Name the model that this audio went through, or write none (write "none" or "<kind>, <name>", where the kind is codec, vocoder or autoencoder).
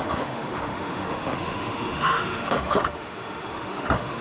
autoencoder, DAC-VAE